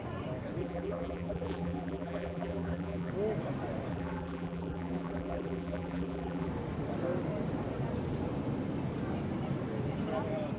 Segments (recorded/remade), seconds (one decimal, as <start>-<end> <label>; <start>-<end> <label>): 0.0-0.6 recorded; 0.6-3.1 remade; 3.1-3.9 recorded; 3.9-6.5 remade; 6.5-10.6 recorded